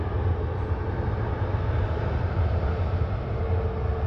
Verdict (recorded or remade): recorded